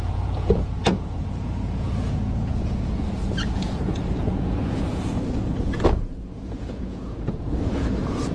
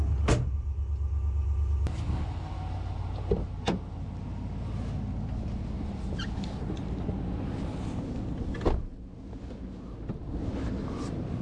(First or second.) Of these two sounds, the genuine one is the second